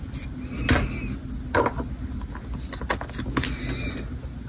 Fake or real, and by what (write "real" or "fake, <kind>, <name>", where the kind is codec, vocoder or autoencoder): real